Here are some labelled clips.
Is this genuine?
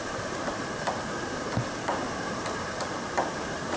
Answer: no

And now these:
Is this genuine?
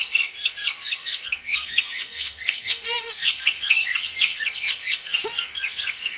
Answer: no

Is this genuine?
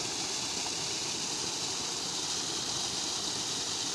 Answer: yes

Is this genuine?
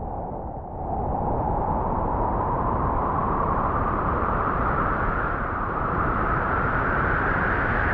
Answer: no